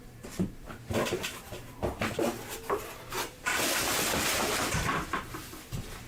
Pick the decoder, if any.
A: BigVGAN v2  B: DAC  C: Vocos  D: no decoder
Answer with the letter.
A